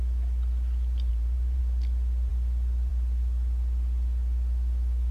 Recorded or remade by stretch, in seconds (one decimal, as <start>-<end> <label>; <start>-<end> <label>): 0.0-1.1 recorded; 1.1-1.6 remade; 1.6-5.1 recorded